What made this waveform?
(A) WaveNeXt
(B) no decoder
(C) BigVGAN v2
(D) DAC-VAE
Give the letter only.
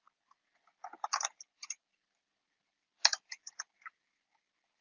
B